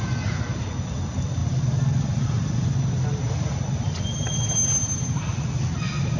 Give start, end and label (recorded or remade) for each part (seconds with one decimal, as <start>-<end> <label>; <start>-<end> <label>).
0.0-6.2 recorded